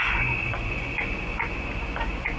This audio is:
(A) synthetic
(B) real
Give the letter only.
A